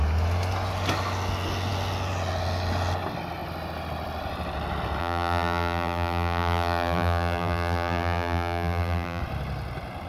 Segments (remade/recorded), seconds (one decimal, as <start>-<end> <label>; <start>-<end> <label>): 0.0-5.0 recorded; 5.0-9.2 remade; 9.2-10.1 recorded